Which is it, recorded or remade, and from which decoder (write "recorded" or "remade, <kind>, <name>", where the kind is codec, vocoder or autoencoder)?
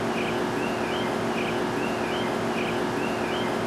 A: recorded